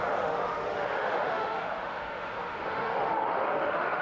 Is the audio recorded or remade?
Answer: remade